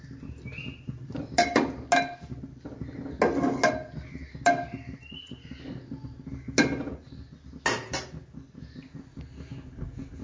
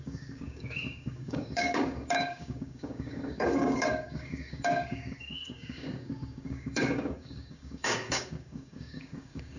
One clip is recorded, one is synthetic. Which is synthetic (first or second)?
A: second